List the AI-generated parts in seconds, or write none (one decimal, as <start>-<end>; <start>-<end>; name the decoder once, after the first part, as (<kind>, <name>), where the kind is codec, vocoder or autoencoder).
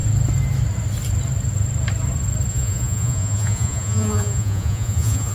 2.5-5.3 (vocoder, Vocos)